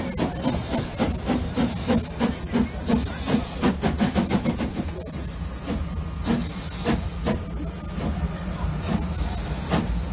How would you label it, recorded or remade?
recorded